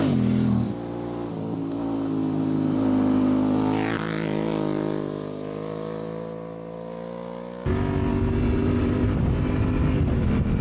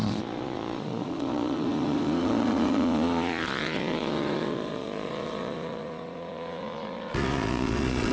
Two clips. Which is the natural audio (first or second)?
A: first